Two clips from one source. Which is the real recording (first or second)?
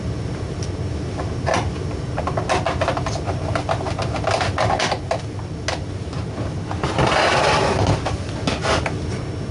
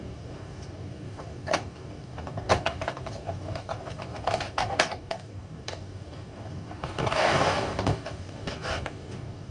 first